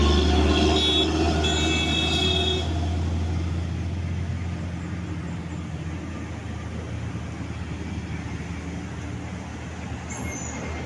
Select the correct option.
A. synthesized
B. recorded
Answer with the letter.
B